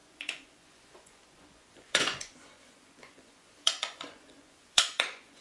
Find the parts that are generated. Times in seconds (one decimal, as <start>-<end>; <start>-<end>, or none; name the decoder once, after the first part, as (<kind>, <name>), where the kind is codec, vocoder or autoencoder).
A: 0.0-5.4 (vocoder, Vocos)